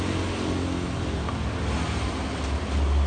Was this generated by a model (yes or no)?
no